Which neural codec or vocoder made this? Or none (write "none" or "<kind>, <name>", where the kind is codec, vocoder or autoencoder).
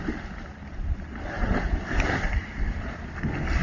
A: none